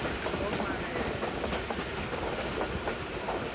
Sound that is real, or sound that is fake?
real